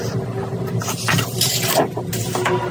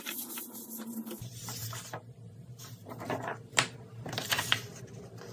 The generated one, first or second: second